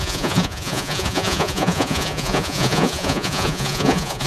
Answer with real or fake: fake